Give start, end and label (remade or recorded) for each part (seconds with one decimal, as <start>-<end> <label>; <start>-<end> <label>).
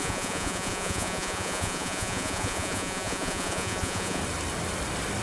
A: 0.0-4.2 remade; 4.2-5.2 recorded